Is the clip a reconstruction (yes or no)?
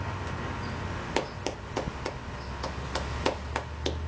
no